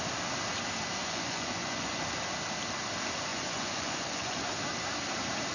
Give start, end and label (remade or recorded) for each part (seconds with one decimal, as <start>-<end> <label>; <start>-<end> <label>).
0.0-1.0 recorded; 1.0-2.0 remade; 2.0-3.3 recorded; 3.3-4.5 remade; 4.5-5.5 recorded